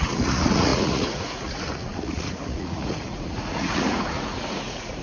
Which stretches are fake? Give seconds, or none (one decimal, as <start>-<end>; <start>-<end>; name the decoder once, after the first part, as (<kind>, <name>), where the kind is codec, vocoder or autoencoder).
0.0-5.0 (vocoder, Vocos)